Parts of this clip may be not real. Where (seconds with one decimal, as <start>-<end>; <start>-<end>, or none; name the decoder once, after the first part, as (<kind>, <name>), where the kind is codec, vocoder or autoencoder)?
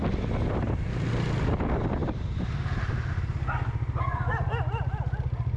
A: 2.0-4.0 (vocoder, BigVGAN v2)